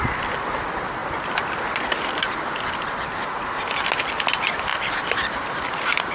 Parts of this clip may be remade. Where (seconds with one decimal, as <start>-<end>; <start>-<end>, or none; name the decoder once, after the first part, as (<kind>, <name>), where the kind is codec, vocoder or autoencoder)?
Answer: none